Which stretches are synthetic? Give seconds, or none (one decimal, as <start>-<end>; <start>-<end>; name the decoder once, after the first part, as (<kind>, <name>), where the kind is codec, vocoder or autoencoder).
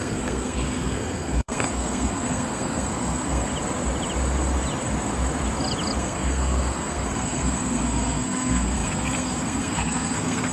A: 0.0-3.5 (codec, SNAC); 6.0-10.5